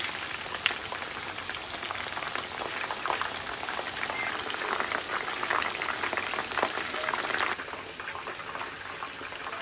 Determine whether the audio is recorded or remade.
recorded